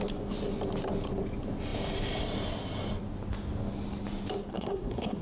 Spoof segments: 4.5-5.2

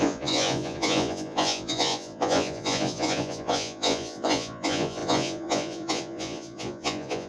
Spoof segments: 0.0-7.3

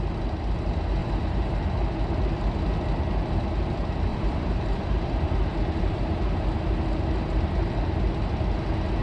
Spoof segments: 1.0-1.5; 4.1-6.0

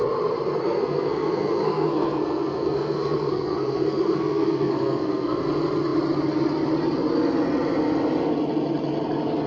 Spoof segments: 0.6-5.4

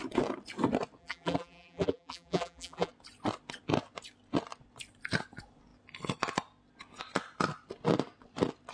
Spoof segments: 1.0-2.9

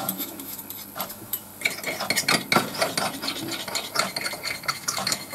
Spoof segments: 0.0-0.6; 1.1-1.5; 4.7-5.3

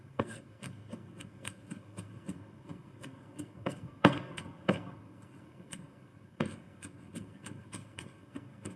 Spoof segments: 0.0-8.8

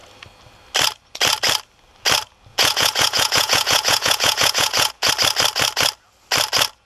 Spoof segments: 2.5-5.1